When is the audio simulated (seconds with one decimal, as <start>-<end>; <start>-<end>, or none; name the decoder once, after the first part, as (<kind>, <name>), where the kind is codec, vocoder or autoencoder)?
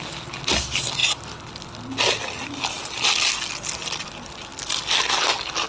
none